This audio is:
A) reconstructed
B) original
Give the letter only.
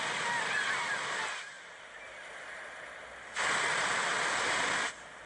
B